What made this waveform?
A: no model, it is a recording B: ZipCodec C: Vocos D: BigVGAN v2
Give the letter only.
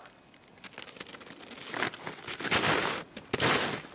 A